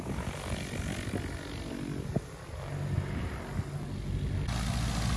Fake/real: real